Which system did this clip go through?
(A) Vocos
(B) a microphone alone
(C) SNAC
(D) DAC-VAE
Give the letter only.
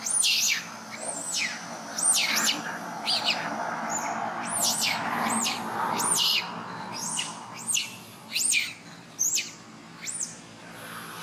B